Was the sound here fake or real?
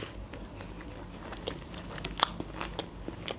real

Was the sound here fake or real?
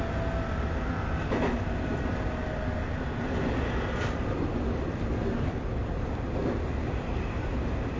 real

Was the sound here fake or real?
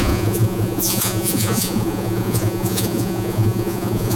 fake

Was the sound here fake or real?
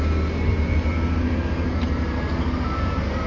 real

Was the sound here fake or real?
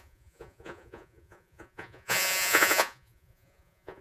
fake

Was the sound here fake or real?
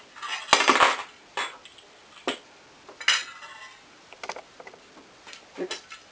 real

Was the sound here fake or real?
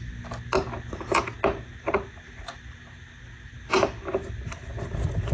real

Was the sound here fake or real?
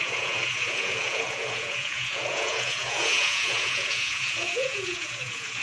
fake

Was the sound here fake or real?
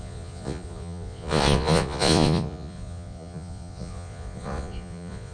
fake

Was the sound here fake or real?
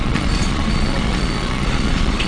fake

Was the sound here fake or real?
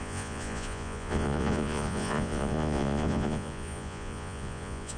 fake